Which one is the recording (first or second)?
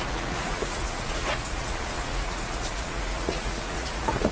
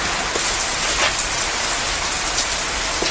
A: second